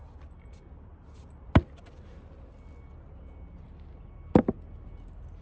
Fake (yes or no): no